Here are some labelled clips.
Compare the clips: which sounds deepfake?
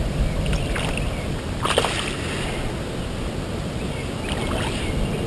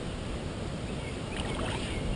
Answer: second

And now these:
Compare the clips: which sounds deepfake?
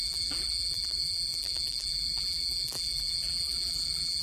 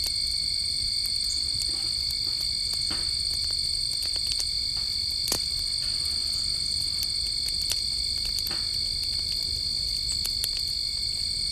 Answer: first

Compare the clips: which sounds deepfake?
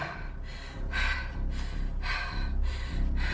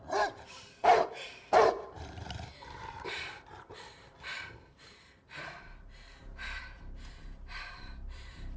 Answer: second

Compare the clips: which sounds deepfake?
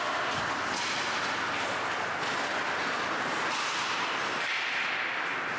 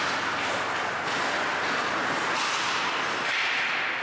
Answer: first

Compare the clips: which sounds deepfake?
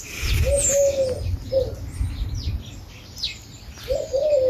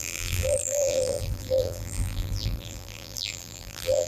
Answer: second